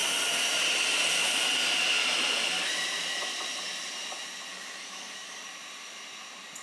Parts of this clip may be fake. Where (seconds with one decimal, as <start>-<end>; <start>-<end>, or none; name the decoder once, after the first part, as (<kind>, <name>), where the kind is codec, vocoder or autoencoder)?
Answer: 4.5-5.4 (codec, DAC)